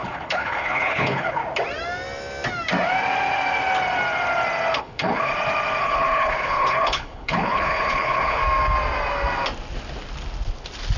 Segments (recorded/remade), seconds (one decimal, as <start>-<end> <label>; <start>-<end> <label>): 0.0-1.4 remade; 1.4-4.8 recorded; 4.8-5.3 remade; 5.3-5.8 recorded; 5.8-8.4 remade; 8.4-11.0 recorded